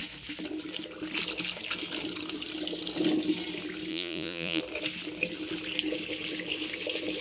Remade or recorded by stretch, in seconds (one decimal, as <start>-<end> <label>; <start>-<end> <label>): 0.0-3.9 recorded; 3.9-4.6 remade; 4.6-7.2 recorded